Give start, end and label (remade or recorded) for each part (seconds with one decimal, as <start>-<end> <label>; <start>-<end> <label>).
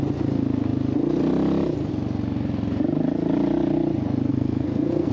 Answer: 0.0-4.3 recorded; 4.3-5.1 remade